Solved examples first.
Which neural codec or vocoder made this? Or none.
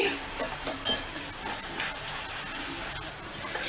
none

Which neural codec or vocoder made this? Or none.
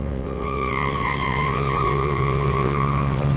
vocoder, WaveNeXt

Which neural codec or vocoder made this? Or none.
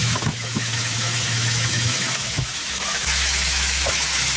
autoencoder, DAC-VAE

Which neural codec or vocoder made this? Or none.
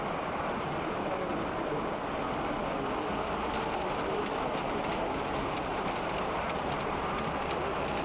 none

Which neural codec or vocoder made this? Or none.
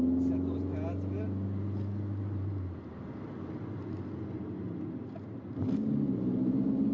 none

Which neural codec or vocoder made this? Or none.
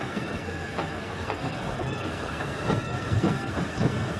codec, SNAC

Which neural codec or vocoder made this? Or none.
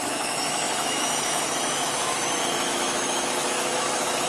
autoencoder, DAC-VAE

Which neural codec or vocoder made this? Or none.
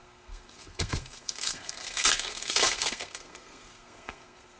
codec, SNAC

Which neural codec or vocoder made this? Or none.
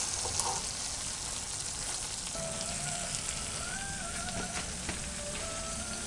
none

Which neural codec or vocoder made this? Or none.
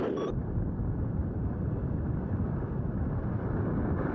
none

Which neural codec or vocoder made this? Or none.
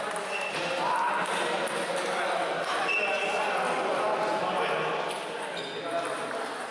none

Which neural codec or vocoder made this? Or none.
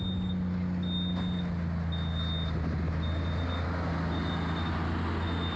none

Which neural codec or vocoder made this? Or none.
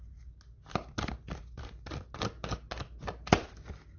none